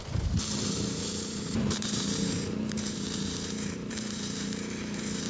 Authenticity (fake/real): fake